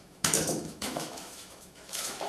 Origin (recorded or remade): remade